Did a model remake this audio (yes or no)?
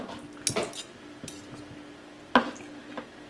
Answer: no